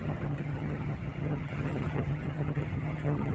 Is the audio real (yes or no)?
no